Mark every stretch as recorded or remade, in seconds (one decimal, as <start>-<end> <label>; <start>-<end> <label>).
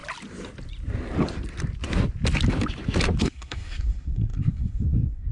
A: 0.0-3.2 recorded; 3.2-5.3 remade